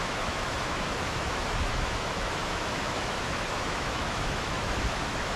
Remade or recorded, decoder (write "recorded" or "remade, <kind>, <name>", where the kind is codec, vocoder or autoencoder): remade, autoencoder, DAC-VAE